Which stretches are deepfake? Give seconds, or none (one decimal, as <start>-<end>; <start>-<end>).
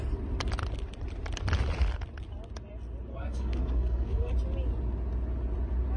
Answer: 3.1-4.3